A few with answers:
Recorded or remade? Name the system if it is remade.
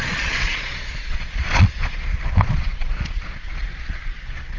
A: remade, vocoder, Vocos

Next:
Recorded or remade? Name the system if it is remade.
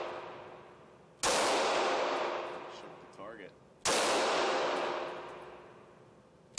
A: recorded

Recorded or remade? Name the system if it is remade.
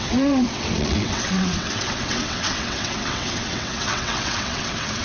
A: remade, vocoder, WaveNeXt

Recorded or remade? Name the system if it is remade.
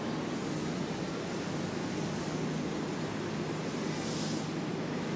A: recorded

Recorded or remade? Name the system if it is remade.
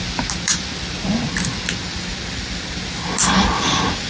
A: recorded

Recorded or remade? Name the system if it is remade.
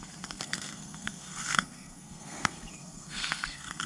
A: remade, codec, SNAC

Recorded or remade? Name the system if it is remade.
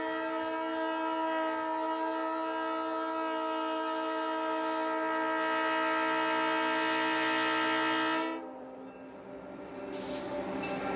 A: recorded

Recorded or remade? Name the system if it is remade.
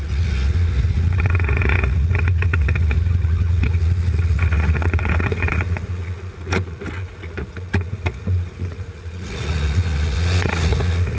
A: remade, vocoder, Vocos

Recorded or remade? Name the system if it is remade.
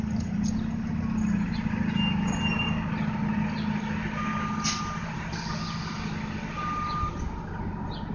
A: recorded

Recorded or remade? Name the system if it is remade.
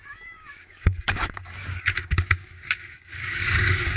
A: remade, codec, DAC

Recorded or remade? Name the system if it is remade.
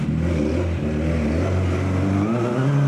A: recorded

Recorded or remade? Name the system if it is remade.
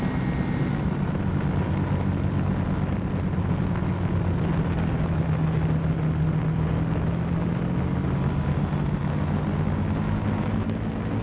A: recorded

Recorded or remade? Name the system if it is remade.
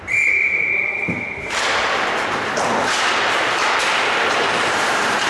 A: remade, vocoder, BigVGAN v2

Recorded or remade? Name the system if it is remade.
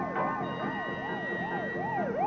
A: recorded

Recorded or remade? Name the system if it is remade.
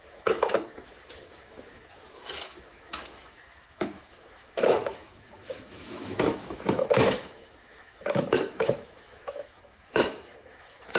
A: remade, autoencoder, DAC-VAE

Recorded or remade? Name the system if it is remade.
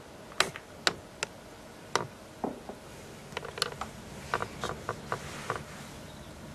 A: recorded